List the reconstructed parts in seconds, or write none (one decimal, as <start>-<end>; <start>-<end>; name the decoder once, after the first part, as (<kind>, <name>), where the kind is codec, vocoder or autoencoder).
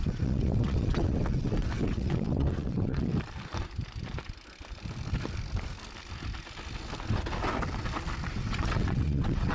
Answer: 0.0-3.1 (vocoder, WaveNeXt); 8.3-9.5